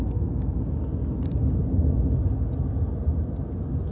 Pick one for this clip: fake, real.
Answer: real